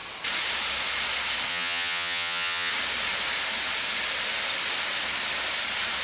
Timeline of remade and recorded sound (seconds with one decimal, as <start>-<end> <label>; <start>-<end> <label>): 0.0-1.5 recorded; 1.5-2.7 remade; 2.7-6.0 recorded